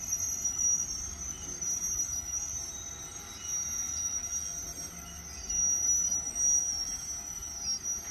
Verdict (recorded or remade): recorded